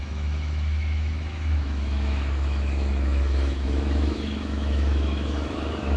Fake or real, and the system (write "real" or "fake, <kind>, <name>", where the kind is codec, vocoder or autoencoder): fake, autoencoder, DAC-VAE